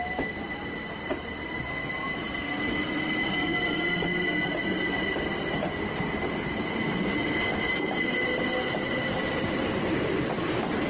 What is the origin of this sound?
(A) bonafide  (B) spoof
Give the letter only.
A